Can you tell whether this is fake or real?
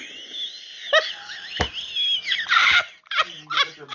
real